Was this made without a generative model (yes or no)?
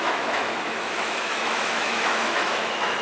no